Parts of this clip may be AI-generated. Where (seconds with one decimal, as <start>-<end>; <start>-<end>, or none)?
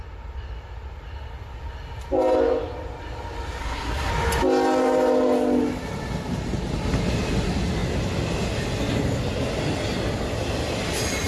3.6-4.1